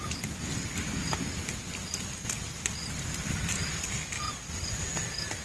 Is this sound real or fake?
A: real